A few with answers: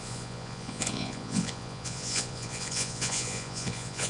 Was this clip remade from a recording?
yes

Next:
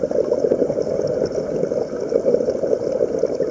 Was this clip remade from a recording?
no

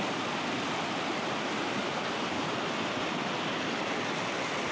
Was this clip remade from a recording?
no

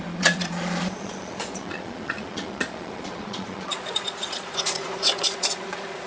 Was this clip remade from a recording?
yes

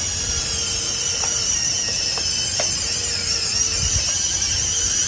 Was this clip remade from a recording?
no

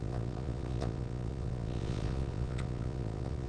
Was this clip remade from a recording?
yes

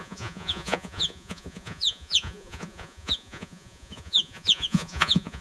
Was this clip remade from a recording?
yes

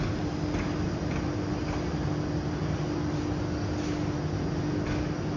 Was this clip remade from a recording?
no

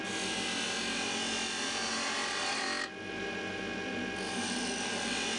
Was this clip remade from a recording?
no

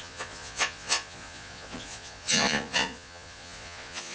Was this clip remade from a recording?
yes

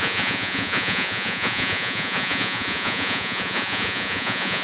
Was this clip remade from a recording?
yes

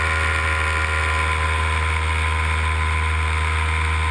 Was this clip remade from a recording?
no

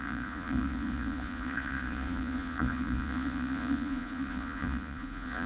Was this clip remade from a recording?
yes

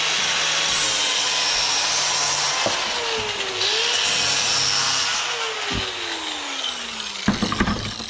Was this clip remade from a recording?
no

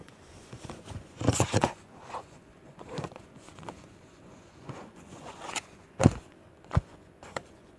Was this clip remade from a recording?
yes